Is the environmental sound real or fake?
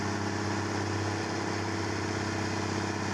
real